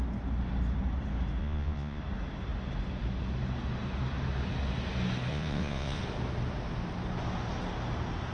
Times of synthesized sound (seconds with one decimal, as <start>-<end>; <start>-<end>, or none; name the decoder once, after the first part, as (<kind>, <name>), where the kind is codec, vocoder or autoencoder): 1.4-2.0 (vocoder, Vocos); 5.3-6.0